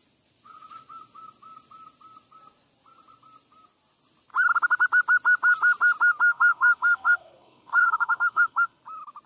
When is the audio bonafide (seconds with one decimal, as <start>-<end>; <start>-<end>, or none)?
0.0-6.3; 8.8-9.3